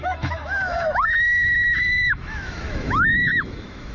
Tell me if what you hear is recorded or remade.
remade